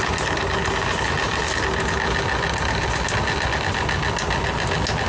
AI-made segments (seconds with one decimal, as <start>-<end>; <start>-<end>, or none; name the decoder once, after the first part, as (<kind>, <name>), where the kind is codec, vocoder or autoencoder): none